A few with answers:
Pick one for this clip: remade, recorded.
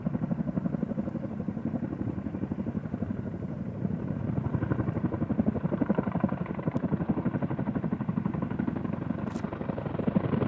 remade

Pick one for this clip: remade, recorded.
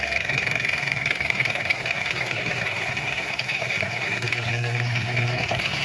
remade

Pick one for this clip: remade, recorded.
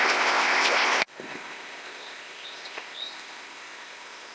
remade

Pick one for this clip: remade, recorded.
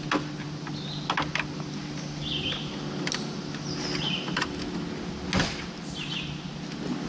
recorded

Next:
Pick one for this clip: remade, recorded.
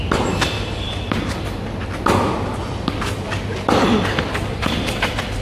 recorded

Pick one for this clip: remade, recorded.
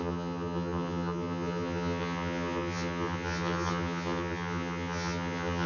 remade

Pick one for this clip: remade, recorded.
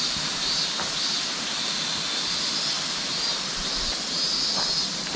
recorded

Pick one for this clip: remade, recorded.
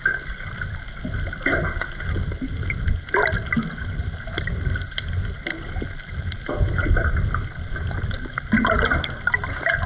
recorded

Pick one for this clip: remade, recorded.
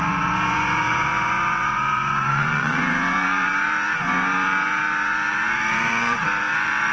remade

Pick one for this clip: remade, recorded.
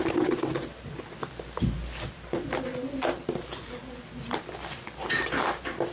recorded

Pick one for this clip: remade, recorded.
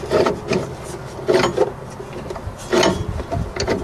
recorded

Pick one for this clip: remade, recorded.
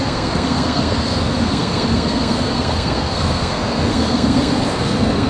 remade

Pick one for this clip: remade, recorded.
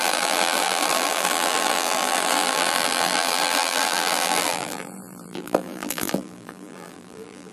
remade